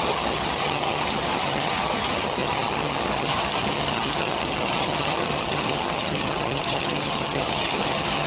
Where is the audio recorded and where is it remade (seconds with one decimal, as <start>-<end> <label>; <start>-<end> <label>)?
0.0-8.3 remade